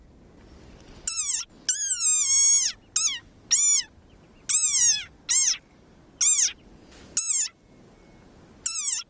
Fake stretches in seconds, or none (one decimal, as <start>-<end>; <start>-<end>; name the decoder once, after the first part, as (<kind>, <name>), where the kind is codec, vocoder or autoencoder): none